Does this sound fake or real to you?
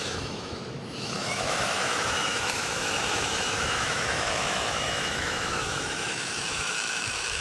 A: fake